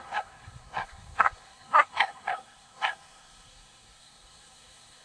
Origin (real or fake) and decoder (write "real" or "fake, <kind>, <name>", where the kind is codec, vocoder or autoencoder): fake, codec, SNAC